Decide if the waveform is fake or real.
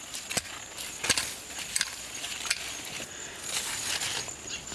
real